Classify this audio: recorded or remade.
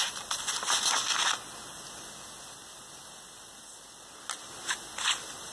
recorded